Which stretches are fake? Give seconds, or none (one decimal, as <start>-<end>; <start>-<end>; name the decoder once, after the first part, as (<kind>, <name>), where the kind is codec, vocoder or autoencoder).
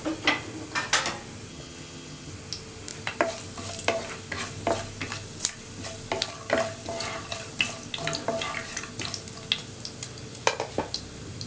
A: 1.5-2.3 (vocoder, HiFi-GAN)